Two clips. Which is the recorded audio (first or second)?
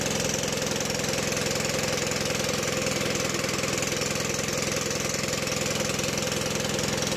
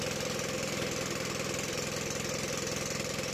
first